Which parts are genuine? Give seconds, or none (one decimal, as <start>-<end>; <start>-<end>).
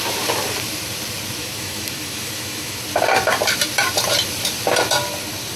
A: 0.0-1.4; 2.8-5.6